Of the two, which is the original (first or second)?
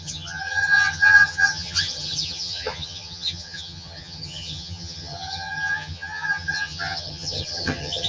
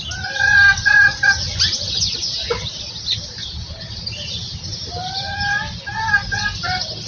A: second